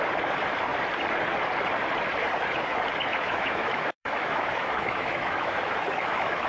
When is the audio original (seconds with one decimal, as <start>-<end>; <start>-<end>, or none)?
0.0-3.1